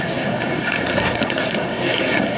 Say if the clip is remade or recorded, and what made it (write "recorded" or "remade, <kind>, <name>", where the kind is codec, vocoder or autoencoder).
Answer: remade, codec, SNAC